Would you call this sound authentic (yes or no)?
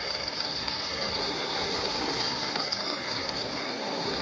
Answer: no